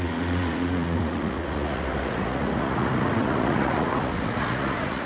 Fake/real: fake